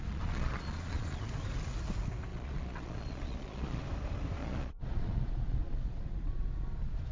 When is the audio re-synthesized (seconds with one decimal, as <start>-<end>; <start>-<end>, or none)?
0.0-1.2; 2.3-3.8; 4.4-7.1